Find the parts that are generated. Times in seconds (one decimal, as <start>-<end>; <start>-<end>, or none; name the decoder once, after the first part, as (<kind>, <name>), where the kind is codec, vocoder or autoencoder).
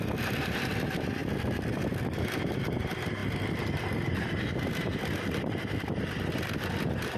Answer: none